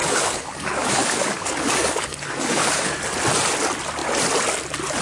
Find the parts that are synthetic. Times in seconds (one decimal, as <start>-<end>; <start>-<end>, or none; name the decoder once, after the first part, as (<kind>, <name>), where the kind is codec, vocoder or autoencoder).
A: 0.0-3.0 (codec, DAC)